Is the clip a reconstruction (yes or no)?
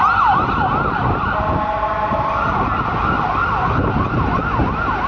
no